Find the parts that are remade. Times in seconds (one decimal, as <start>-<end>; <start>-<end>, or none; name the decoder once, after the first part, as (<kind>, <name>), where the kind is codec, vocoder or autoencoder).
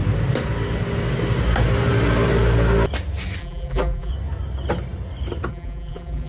3.4-4.1 (vocoder, BigVGAN v2); 5.5-6.3